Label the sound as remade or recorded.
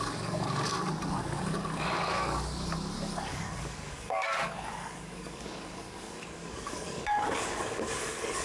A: remade